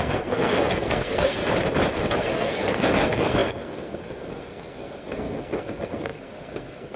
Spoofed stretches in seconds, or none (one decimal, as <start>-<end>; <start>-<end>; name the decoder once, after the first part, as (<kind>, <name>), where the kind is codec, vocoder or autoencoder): 0.0-1.4 (codec, SNAC); 1.9-7.0